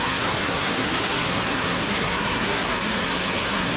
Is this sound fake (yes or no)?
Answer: yes